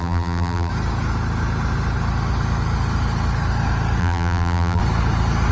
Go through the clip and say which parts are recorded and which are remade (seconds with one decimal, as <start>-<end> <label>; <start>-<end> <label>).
0.0-0.7 remade; 0.7-4.0 recorded; 4.0-4.8 remade; 4.8-5.5 recorded